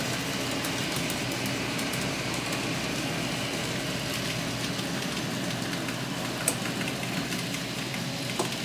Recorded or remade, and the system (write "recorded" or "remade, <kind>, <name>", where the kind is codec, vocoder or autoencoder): recorded